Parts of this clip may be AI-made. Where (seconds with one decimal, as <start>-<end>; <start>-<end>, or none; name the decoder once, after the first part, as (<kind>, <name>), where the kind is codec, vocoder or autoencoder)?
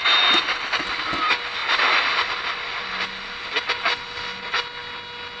none